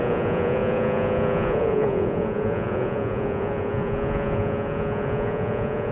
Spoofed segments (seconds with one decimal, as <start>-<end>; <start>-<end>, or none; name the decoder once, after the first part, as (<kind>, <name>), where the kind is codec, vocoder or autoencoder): 0.0-5.9 (vocoder, Vocos)